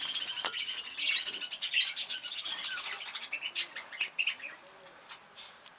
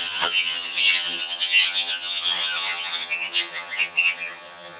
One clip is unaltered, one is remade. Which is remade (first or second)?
second